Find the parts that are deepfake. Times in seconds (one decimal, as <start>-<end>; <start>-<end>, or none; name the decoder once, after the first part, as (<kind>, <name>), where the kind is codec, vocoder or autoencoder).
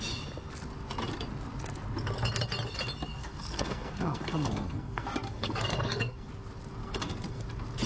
3.1-6.3 (codec, SNAC); 6.8-7.4